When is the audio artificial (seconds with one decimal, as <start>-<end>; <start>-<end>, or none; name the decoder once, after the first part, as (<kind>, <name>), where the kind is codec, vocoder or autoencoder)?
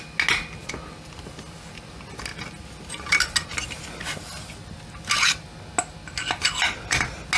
none